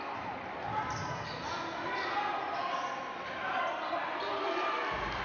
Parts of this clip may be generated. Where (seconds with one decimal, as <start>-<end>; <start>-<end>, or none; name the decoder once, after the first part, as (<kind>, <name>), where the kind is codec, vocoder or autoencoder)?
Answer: none